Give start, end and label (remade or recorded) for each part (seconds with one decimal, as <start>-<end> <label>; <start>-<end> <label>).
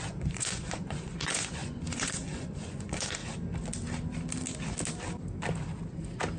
0.0-3.2 remade; 3.2-6.4 recorded